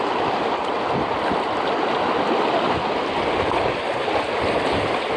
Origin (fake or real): real